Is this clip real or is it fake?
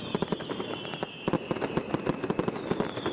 real